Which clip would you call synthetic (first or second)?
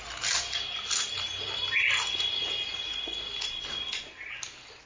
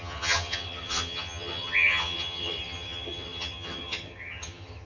second